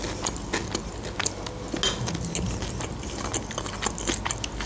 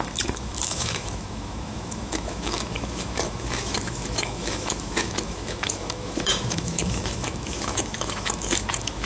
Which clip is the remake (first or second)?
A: second